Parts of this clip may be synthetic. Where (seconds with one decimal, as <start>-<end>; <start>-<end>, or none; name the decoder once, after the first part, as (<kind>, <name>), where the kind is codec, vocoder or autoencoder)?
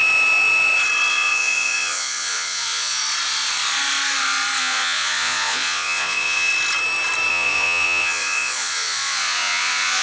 1.1-3.0 (vocoder, Vocos); 4.6-6.5; 7.3-10.0